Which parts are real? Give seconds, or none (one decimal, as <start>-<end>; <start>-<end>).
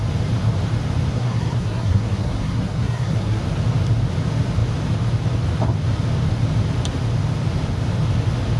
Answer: 0.0-1.1; 3.4-8.6